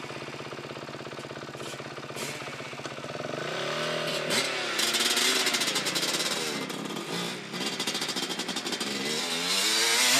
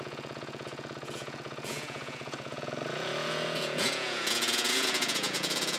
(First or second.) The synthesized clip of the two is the second